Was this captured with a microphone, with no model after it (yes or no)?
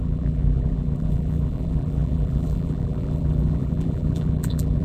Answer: no